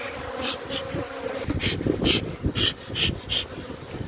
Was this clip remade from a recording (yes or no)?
no